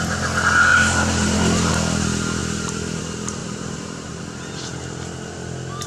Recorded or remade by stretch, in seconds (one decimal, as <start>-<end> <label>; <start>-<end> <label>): 0.0-0.7 recorded; 0.7-1.7 remade; 1.7-3.4 recorded; 3.4-4.2 remade; 4.2-5.9 recorded